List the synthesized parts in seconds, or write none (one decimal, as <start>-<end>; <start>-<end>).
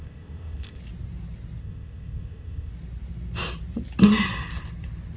0.0-0.8; 1.6-2.7